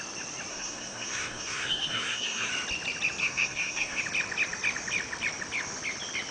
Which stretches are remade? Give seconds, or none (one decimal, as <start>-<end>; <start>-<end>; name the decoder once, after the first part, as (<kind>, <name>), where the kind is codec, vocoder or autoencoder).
0.5-2.5 (codec, SNAC); 3.2-4.0